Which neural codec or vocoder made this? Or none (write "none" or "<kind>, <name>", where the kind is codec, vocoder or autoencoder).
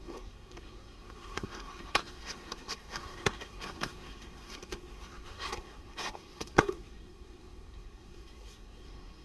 codec, SNAC